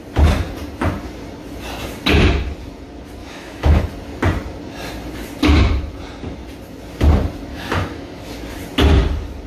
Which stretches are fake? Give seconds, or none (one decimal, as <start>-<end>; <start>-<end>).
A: 3.2-3.8; 7.5-8.3

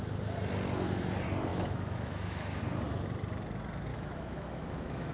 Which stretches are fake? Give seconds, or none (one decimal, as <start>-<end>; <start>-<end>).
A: 1.5-2.6; 3.9-5.1